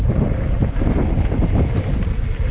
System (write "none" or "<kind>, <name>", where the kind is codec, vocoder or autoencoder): vocoder, BigVGAN v2